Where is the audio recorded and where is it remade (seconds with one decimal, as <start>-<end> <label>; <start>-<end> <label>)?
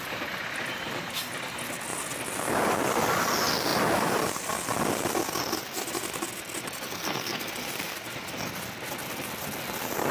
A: 0.0-6.9 recorded; 6.9-7.5 remade; 7.5-10.1 recorded